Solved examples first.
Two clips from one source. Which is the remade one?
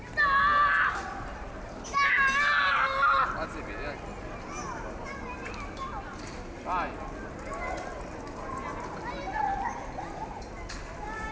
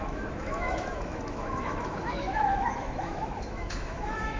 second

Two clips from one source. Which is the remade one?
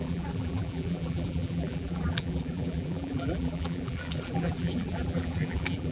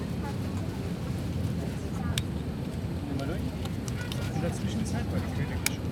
first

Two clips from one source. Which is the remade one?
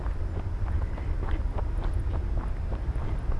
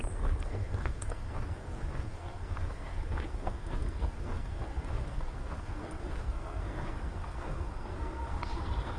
second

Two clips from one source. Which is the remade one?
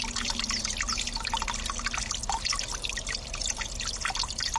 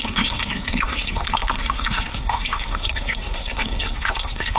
second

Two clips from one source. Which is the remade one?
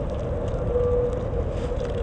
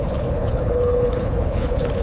second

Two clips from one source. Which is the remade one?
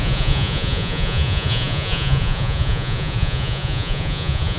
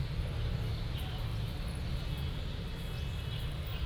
first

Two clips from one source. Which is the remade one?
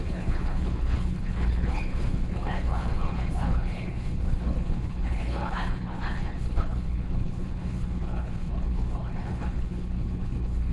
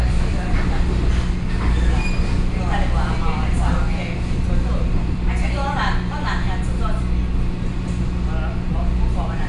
first